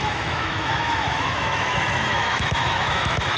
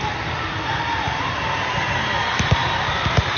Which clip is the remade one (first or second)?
first